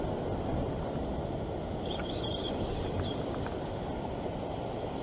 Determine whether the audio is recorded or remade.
recorded